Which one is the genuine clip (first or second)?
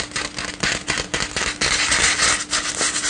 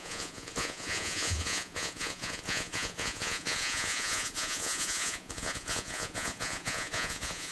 first